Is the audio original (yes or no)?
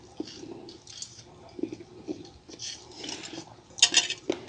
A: yes